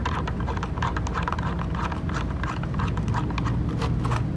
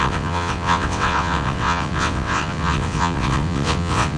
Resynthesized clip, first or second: second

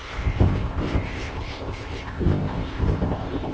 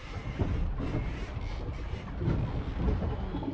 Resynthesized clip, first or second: first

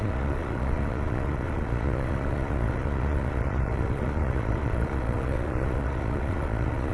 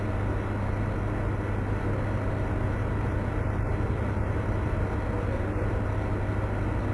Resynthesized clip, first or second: first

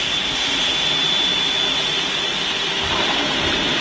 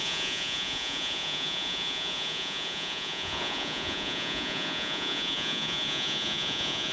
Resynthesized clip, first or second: second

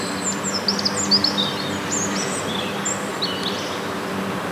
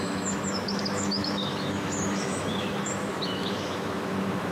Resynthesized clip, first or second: second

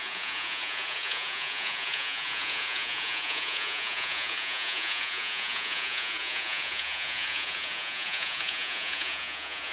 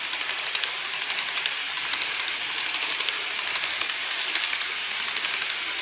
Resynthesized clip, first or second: first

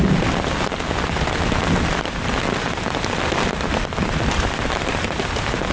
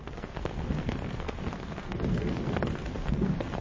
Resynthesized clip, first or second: second